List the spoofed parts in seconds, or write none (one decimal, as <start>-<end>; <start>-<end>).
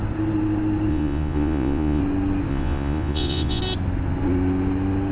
0.9-2.0; 2.5-3.6